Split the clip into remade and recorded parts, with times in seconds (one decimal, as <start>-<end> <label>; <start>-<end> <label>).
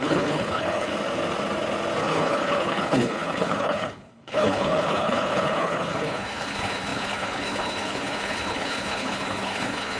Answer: 0.0-0.9 remade; 0.9-2.0 recorded; 2.0-10.0 remade